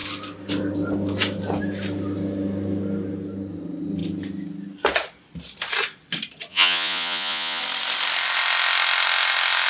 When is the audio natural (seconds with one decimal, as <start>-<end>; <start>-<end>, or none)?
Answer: 0.0-6.5; 7.6-9.7